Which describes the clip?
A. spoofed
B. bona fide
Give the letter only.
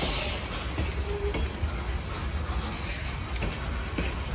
B